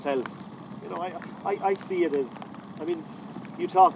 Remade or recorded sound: recorded